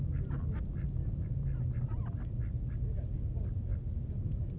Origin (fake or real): real